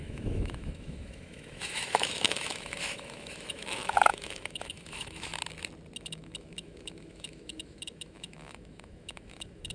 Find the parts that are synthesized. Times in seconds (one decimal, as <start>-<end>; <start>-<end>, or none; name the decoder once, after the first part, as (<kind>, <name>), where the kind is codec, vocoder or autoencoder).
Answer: 0.0-5.3 (autoencoder, DAC-VAE); 6.0-9.7